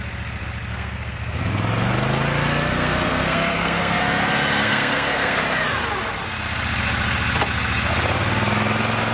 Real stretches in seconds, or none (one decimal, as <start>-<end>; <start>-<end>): 0.0-0.7; 1.5-2.7; 4.0-4.6; 5.4-9.1